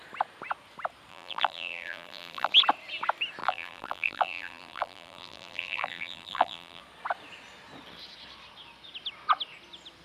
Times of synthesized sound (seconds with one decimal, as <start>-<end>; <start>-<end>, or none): 1.1-2.5; 3.4-6.8